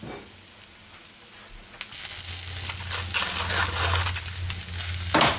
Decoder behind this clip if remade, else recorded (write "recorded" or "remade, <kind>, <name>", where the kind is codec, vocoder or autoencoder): recorded